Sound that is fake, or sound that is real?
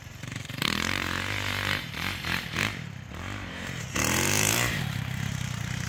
fake